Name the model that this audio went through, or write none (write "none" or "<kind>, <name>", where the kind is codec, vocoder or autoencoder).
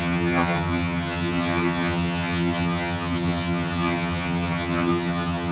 vocoder, HiFi-GAN